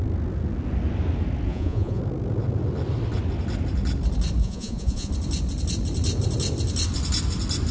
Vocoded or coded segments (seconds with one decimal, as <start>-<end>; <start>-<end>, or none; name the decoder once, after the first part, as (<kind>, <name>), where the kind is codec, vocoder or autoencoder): 1.5-2.0 (vocoder, Vocos); 4.4-5.1